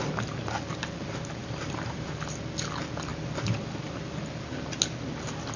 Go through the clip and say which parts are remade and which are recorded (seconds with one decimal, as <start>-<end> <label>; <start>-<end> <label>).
0.0-1.4 recorded; 1.4-2.4 remade; 2.4-5.6 recorded